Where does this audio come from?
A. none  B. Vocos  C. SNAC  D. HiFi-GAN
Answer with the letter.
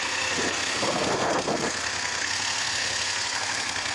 C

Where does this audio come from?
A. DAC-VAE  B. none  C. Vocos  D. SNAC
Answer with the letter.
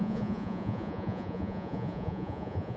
C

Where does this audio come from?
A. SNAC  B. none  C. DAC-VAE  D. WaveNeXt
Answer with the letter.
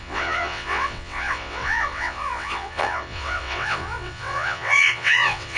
D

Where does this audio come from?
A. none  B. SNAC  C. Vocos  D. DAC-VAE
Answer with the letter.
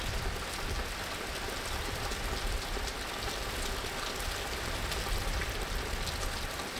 A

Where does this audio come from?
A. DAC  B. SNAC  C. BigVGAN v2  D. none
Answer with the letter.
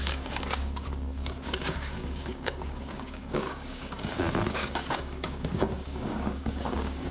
A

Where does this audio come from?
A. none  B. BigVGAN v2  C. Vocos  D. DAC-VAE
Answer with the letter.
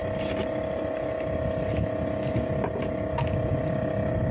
A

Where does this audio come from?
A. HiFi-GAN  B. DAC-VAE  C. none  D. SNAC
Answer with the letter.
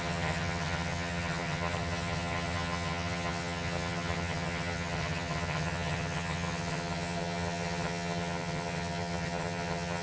A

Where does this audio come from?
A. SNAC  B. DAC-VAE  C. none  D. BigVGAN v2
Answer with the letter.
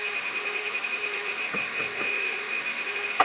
B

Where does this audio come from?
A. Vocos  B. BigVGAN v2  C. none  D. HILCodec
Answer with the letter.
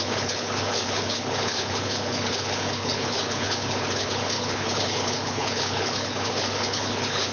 D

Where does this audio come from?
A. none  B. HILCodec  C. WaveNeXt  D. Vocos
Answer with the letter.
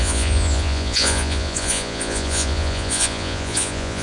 D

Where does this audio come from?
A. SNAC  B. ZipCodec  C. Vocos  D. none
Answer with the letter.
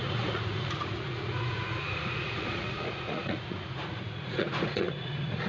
C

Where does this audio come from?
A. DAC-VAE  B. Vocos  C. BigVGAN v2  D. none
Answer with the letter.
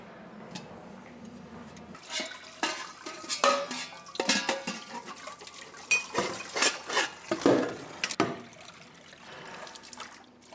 D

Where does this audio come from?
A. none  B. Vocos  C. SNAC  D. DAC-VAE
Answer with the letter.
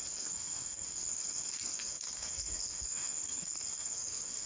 C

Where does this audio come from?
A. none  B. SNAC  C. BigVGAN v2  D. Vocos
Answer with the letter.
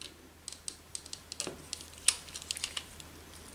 A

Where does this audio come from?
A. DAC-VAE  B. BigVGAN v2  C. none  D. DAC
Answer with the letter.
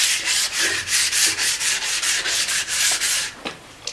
B